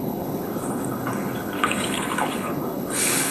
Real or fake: fake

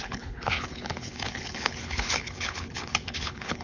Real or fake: fake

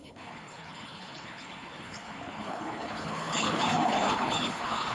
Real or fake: fake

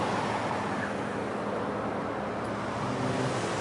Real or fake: real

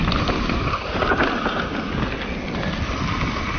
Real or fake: real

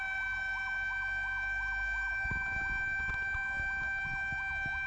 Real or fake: real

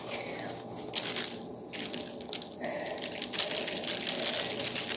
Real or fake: real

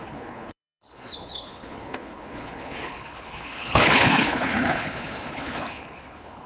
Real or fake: fake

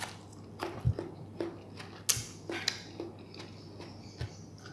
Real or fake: real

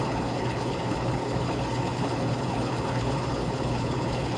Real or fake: fake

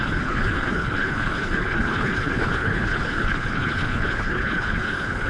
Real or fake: fake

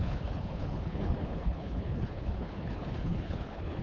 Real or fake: fake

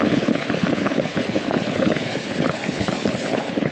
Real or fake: fake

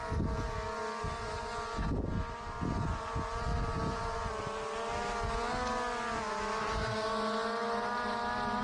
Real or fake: real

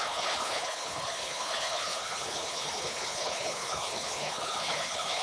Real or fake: fake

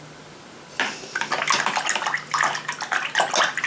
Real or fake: real